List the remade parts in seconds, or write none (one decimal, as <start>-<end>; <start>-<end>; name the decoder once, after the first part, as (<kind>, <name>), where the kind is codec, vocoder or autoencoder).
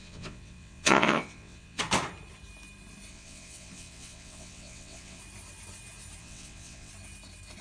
0.0-1.8 (vocoder, WaveNeXt); 3.1-5.2; 6.2-6.9